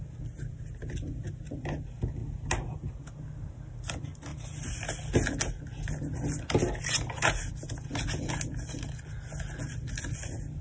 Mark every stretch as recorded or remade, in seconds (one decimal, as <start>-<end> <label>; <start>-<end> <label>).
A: 0.0-10.6 recorded